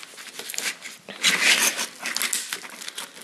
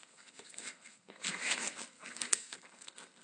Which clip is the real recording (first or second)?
first